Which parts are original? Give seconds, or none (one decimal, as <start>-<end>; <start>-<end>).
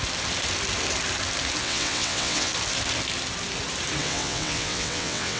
0.0-1.6; 2.5-4.0